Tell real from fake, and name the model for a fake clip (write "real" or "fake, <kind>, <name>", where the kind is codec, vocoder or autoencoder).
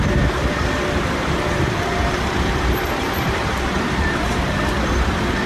fake, vocoder, BigVGAN v2